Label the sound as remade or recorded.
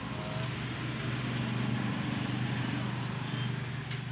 recorded